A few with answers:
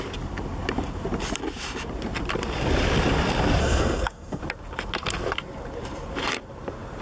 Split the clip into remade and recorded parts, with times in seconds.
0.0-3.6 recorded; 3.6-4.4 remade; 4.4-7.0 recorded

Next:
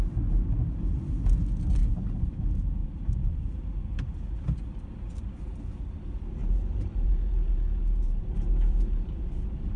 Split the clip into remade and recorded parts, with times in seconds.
0.0-2.8 recorded; 2.8-3.6 remade; 3.6-6.4 recorded; 6.4-9.3 remade; 9.3-9.8 recorded

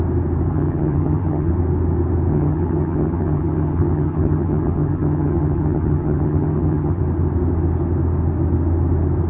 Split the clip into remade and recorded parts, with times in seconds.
0.0-0.5 recorded; 0.5-1.5 remade; 1.5-2.3 recorded; 2.3-7.0 remade; 7.0-9.3 recorded

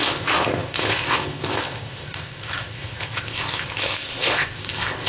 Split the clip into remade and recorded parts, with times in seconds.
0.0-5.1 remade

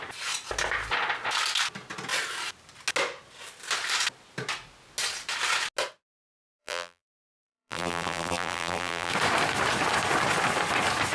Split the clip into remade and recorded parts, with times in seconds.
0.0-6.6 recorded; 6.6-9.1 remade; 9.1-11.1 recorded

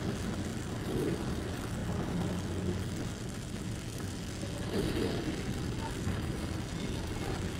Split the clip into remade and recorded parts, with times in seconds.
0.0-7.6 recorded

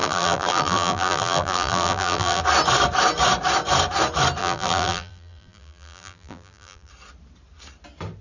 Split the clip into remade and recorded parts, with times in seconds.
0.0-2.4 remade; 2.4-4.4 recorded; 4.4-6.9 remade; 6.9-8.2 recorded

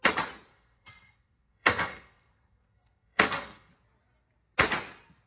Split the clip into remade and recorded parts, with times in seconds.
0.0-0.5 recorded; 0.5-3.7 remade; 3.7-5.3 recorded